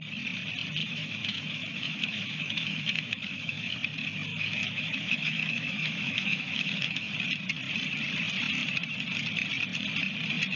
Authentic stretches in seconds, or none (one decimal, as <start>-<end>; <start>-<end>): 0.0-0.8; 3.7-4.3; 7.1-10.6